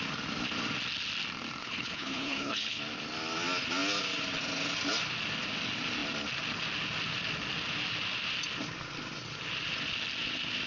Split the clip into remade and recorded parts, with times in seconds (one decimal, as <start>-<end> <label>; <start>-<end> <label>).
0.0-1.6 recorded; 1.6-2.8 remade; 2.8-10.7 recorded